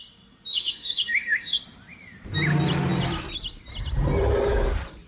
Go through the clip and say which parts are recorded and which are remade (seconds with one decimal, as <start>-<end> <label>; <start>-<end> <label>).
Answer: 0.0-0.5 recorded; 0.5-1.6 remade; 1.6-5.1 recorded